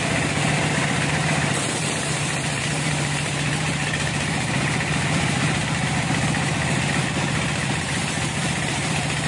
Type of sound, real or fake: fake